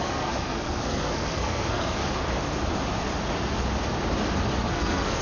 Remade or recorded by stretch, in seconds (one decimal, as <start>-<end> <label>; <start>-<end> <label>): 0.0-2.0 remade; 2.0-4.6 recorded; 4.6-5.2 remade